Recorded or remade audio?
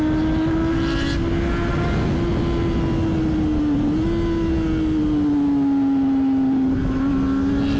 recorded